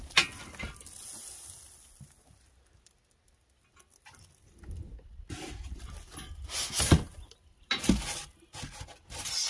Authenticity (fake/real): real